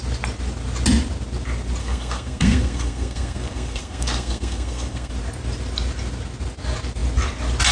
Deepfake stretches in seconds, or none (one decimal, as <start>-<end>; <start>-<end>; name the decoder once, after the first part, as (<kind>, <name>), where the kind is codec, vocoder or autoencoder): 1.8-5.1 (codec, SNAC)